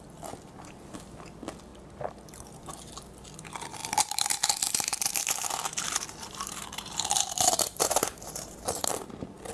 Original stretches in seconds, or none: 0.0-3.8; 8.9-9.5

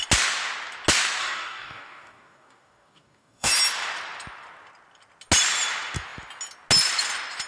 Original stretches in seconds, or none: 0.0-1.2; 3.5-7.5

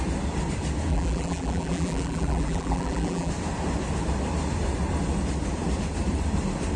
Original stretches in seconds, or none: 0.0-0.9; 3.3-6.8

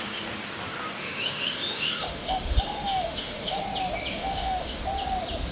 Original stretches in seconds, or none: 0.0-1.0; 3.6-4.1; 4.8-5.5